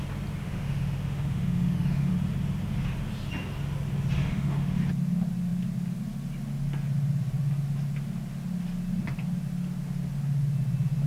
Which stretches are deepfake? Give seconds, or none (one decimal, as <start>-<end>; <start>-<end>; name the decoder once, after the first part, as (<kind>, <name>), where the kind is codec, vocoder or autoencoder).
0.4-2.1 (autoencoder, DAC-VAE); 4.2-4.8